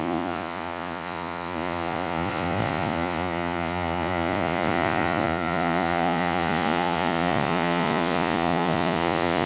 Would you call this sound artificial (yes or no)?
yes